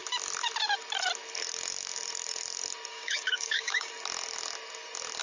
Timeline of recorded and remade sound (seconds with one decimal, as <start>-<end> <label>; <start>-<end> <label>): 0.0-2.9 recorded; 2.9-3.9 remade; 3.9-5.2 recorded